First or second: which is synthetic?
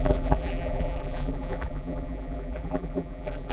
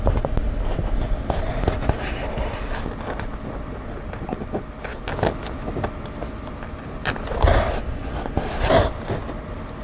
first